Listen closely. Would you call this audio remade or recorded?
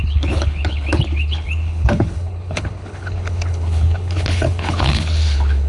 remade